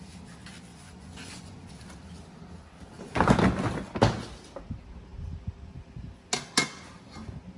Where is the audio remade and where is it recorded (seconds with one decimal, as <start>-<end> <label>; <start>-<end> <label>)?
0.0-0.7 recorded; 0.7-1.7 remade; 1.7-7.6 recorded